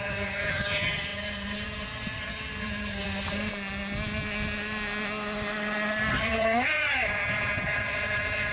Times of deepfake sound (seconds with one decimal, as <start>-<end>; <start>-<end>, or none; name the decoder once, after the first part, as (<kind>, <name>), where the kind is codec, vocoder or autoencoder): 0.0-3.5 (vocoder, HiFi-GAN); 6.1-8.5